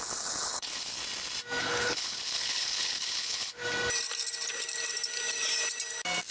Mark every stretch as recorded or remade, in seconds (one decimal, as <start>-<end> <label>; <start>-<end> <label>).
0.0-1.0 remade; 1.0-1.6 recorded; 1.6-3.6 remade; 3.6-6.3 recorded